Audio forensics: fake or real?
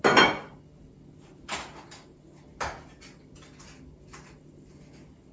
real